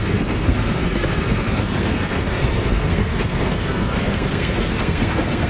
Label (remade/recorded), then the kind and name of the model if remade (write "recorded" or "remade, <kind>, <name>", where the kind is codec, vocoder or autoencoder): remade, codec, SNAC